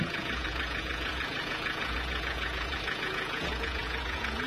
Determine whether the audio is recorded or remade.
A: remade